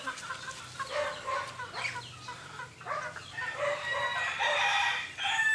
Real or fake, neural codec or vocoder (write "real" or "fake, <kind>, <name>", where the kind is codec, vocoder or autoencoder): real